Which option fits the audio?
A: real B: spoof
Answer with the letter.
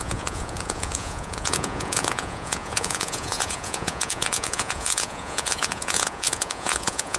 B